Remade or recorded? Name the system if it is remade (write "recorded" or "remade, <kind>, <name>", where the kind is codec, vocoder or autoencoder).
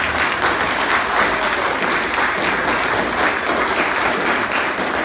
recorded